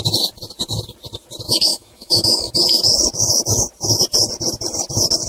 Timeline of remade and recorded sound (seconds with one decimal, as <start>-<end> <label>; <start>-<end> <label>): 0.0-1.7 recorded; 1.7-2.5 remade; 2.5-5.3 recorded